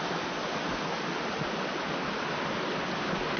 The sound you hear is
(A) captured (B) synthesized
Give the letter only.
A